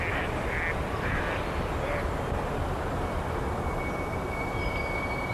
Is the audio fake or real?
real